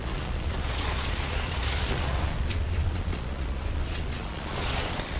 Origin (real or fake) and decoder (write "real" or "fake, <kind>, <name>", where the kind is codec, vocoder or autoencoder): fake, vocoder, Vocos